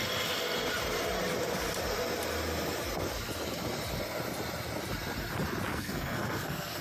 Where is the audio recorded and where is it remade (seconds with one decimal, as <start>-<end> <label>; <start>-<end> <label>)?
0.0-5.7 recorded; 5.7-6.8 remade